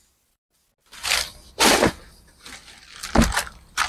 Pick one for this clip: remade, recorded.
recorded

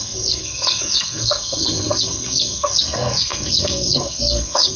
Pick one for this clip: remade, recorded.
remade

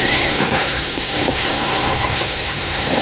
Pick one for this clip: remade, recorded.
remade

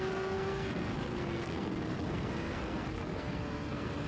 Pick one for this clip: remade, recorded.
remade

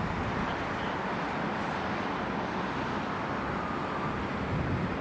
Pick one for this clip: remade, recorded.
recorded